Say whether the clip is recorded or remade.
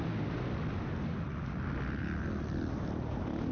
recorded